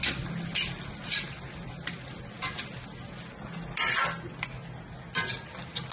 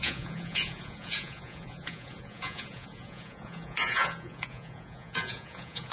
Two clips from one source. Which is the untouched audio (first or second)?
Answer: first